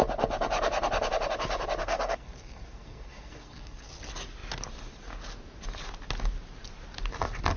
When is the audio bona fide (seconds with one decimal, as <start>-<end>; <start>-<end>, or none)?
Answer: 0.0-1.8; 3.9-7.6